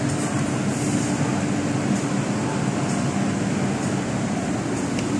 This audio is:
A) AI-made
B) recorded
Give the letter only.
B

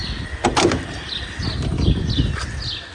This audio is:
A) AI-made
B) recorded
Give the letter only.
B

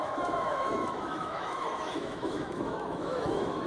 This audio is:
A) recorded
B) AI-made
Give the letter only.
B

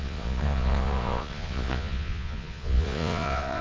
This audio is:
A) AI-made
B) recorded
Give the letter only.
A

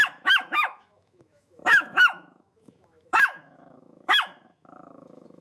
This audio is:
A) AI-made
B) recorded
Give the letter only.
A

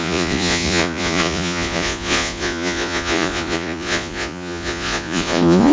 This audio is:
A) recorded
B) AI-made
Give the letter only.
B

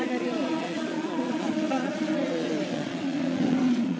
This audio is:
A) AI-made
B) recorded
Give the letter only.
A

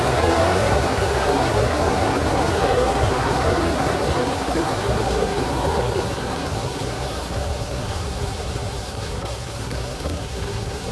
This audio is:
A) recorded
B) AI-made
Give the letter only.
B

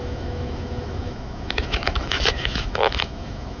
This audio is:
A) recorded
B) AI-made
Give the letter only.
B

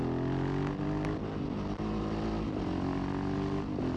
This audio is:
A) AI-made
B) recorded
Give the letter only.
B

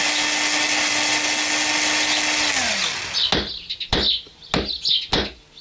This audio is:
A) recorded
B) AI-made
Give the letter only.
A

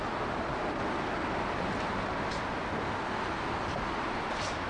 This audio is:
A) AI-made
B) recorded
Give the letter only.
B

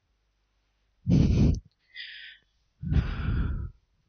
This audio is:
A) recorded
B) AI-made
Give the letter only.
A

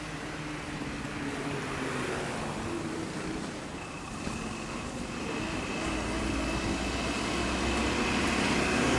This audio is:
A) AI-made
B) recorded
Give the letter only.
B